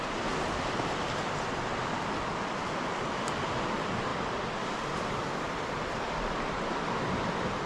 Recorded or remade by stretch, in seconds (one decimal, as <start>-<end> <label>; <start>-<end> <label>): 0.0-7.7 recorded